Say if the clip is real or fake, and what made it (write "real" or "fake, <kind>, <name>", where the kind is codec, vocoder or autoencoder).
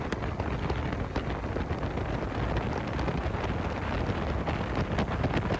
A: real